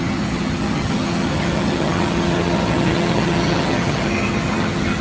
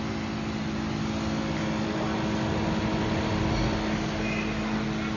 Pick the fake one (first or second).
first